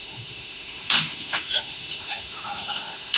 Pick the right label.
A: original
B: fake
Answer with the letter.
B